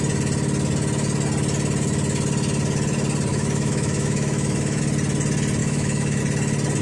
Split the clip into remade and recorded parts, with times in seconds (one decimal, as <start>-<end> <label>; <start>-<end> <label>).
0.0-3.3 recorded; 3.3-4.8 remade; 4.8-5.6 recorded; 5.6-6.2 remade; 6.2-6.8 recorded